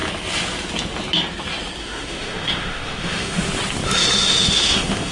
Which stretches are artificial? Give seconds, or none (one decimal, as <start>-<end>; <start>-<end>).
1.8-3.4; 4.3-5.1